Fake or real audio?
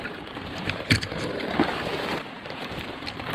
fake